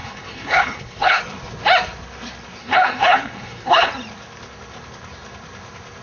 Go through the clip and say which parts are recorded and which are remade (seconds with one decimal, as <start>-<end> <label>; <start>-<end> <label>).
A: 0.0-1.2 remade; 1.2-2.6 recorded; 2.6-3.9 remade; 3.9-6.0 recorded